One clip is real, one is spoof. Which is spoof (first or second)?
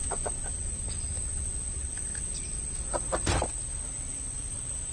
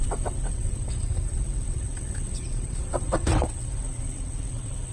second